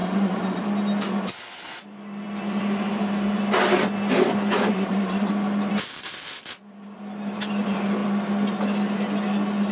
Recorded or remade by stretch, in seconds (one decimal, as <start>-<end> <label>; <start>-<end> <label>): 0.0-0.6 remade; 0.6-4.7 recorded; 4.7-5.3 remade; 5.3-9.7 recorded